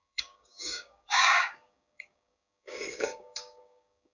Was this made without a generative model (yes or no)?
no